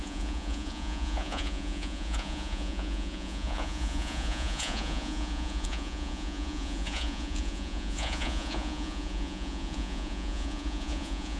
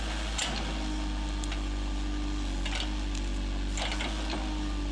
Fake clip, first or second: first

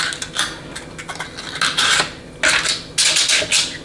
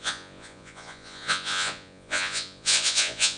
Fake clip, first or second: second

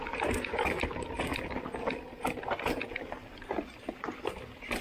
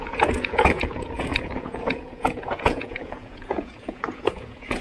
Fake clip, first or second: second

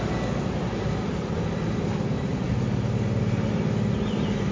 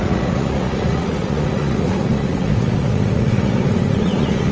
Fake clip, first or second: second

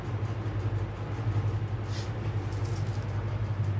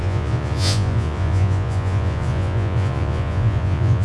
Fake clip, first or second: second